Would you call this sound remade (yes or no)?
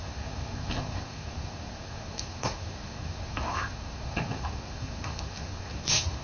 yes